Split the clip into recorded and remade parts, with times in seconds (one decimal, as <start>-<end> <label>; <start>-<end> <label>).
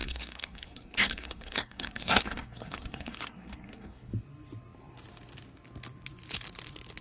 0.0-4.1 remade; 4.1-7.0 recorded